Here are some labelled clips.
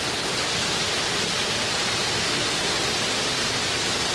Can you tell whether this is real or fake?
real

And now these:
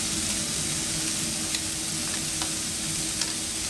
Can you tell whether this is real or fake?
real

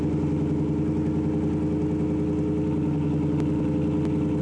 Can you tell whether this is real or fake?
real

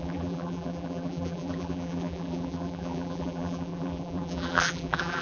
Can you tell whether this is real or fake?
fake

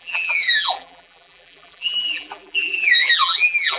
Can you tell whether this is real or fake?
fake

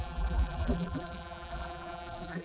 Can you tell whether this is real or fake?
fake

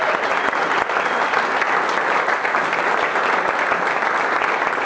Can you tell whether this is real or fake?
real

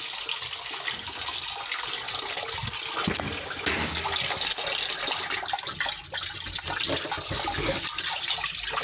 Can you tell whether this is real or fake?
real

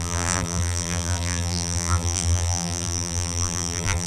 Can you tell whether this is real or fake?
fake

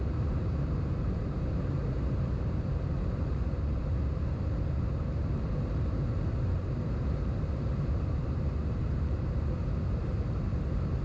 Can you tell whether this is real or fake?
fake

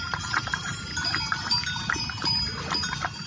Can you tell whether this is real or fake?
fake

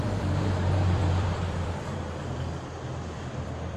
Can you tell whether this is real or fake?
fake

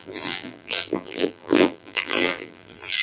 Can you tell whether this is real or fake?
fake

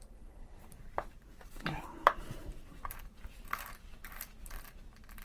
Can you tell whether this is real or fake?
fake